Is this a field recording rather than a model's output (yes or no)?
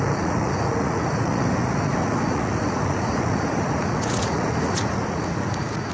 no